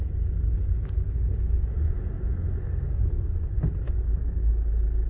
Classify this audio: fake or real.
real